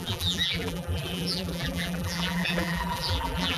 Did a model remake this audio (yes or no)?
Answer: yes